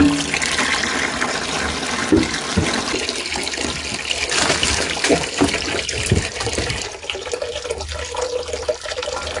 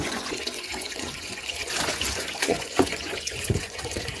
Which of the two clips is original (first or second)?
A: first